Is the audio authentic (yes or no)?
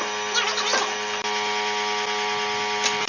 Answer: yes